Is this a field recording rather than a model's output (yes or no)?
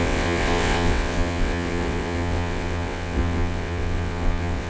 no